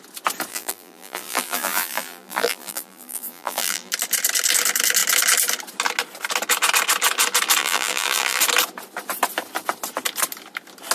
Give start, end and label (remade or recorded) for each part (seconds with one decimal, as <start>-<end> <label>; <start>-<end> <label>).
0.0-0.5 recorded; 0.5-3.9 remade; 3.9-7.6 recorded; 7.6-8.4 remade; 8.4-10.9 recorded